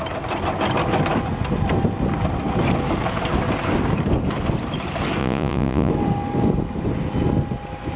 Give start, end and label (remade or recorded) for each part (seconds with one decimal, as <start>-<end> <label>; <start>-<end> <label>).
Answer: 0.0-5.2 recorded; 5.2-5.9 remade; 5.9-8.0 recorded